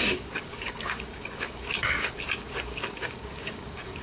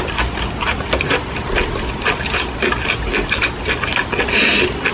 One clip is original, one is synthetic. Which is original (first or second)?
second